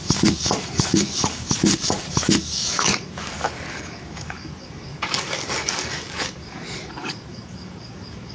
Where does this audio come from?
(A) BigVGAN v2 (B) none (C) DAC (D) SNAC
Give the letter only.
C